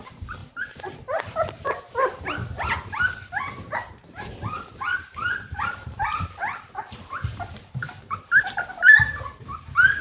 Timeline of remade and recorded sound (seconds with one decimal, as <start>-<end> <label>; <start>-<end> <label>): 0.0-0.4 remade; 0.4-3.4 recorded; 3.4-10.0 remade